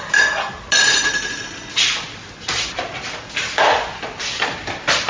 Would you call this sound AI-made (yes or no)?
no